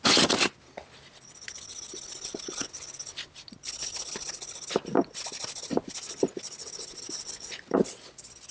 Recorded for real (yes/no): yes